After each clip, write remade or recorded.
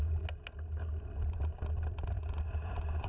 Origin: recorded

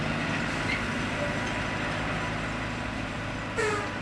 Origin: recorded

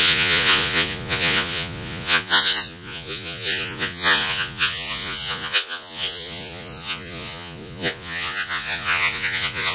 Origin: remade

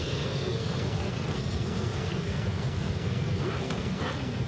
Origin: remade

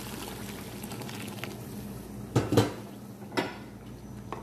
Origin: recorded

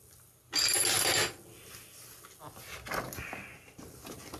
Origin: recorded